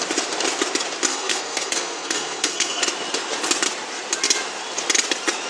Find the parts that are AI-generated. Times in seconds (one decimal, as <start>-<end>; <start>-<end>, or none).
1.1-2.8